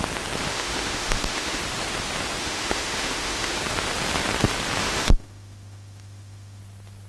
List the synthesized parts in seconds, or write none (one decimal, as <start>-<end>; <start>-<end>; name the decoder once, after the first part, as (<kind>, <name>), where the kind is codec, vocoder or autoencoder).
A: 0.5-1.6 (autoencoder, DAC-VAE); 2.4-3.6; 4.8-6.6